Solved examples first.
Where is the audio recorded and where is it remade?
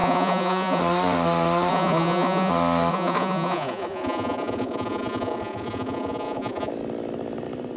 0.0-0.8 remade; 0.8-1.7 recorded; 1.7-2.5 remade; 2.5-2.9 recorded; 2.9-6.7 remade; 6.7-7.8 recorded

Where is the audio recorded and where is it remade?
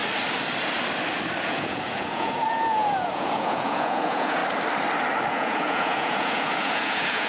0.0-1.4 recorded; 1.4-4.4 remade; 4.4-5.3 recorded; 5.3-7.3 remade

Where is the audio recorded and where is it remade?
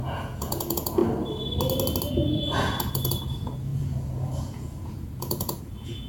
0.0-1.0 remade; 1.0-2.1 recorded; 2.1-6.1 remade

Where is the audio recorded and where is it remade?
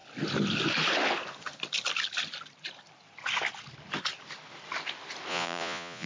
0.0-5.3 recorded; 5.3-6.1 remade